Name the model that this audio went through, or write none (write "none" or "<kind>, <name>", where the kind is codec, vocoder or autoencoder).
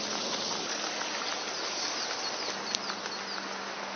none